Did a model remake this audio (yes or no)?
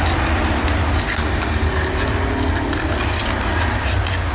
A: no